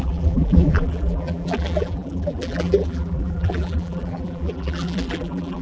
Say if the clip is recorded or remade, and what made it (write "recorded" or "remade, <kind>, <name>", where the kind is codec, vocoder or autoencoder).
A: remade, vocoder, BigVGAN v2